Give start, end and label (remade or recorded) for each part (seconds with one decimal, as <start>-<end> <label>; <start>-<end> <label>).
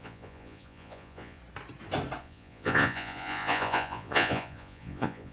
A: 0.0-1.4 remade; 1.4-2.2 recorded; 2.2-5.3 remade